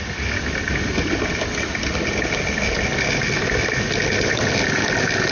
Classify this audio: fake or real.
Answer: real